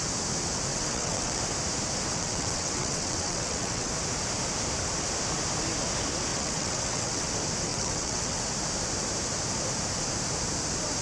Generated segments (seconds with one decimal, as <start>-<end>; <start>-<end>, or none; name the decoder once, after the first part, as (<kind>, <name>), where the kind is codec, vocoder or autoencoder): 0.7-1.4 (vocoder, WaveNeXt); 2.1-3.9; 6.3-7.3; 7.7-8.4